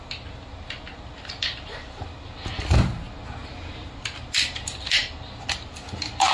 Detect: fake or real real